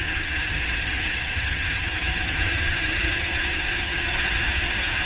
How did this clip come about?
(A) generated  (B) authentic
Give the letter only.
A